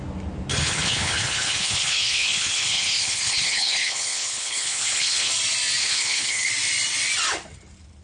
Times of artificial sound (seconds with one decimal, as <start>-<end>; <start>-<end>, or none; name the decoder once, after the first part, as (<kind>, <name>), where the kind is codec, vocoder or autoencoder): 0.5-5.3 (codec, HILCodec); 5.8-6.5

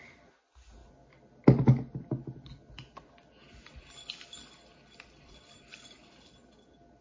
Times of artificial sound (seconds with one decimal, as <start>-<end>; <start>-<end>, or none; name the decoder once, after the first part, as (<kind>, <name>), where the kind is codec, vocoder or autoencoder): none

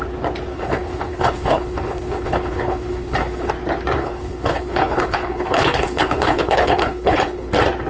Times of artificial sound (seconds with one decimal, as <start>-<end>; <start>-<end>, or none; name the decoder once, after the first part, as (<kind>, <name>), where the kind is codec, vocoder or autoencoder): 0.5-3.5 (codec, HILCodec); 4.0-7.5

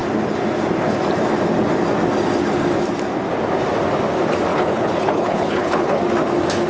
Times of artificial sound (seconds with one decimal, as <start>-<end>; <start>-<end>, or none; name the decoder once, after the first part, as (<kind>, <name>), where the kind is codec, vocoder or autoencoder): 4.5-6.0 (codec, HILCodec)

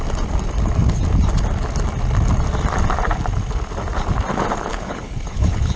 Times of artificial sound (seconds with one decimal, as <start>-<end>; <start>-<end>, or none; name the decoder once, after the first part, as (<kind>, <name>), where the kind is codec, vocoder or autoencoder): 4.7-5.8 (codec, HILCodec)

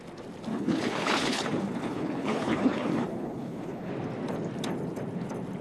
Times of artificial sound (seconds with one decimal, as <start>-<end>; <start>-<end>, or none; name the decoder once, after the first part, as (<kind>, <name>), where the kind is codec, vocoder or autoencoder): 0.5-3.9 (codec, HILCodec)

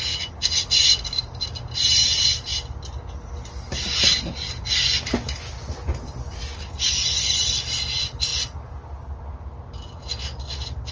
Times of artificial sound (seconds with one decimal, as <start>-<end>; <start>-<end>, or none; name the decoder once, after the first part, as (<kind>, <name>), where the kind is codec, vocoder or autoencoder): none